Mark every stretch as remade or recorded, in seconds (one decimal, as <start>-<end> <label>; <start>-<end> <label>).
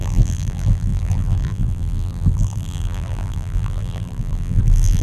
0.0-5.0 remade